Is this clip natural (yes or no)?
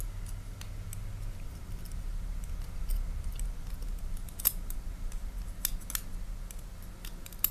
yes